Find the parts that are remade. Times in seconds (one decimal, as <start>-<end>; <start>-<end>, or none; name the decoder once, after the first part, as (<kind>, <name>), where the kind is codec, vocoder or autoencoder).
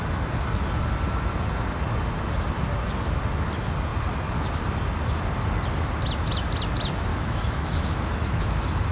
7.1-8.5 (autoencoder, DAC-VAE)